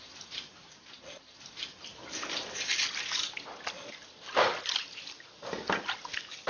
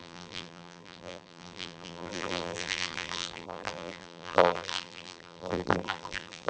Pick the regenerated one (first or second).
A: second